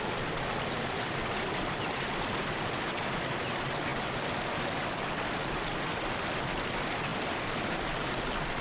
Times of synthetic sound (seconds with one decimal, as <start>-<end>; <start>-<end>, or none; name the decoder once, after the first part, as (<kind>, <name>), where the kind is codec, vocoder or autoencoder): none